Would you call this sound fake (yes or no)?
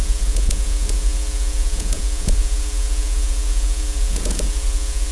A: yes